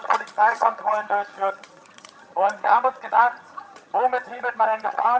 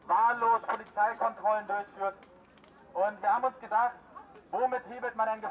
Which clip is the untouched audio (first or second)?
second